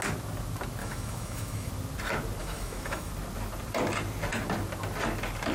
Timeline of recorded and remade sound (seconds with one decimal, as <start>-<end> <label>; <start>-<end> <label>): 0.0-0.8 recorded; 0.8-1.7 remade; 1.7-2.4 recorded; 2.4-3.1 remade; 3.1-5.5 recorded